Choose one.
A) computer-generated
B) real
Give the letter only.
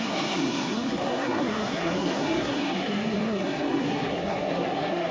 A